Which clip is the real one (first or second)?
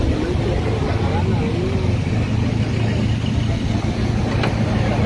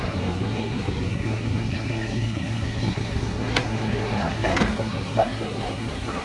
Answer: first